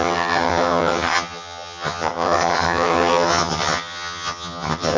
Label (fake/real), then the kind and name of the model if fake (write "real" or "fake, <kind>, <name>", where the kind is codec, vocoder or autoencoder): fake, vocoder, HiFi-GAN